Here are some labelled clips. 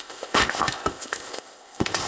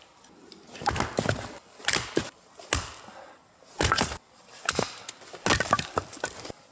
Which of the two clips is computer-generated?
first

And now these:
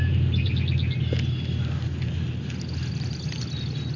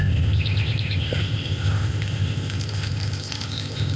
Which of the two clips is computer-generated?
second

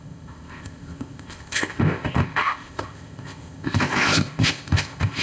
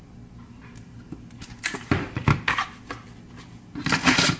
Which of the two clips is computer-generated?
first